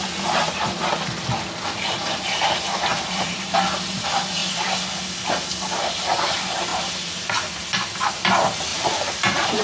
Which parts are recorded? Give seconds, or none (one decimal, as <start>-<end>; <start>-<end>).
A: 0.0-2.9; 3.5-6.7; 7.3-8.7